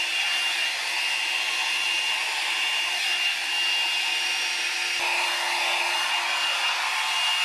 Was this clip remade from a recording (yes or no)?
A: no